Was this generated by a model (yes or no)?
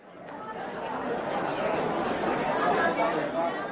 no